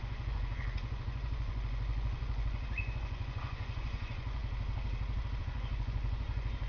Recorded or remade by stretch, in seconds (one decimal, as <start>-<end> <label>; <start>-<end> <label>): 0.0-4.4 remade; 4.4-5.4 recorded; 5.4-6.7 remade